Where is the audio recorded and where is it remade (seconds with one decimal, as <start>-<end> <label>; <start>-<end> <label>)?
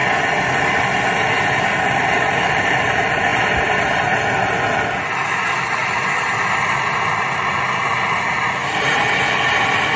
0.0-10.0 recorded